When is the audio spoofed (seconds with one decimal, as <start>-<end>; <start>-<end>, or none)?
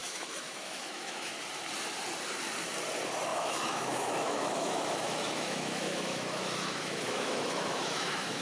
0.0-1.3; 3.3-8.4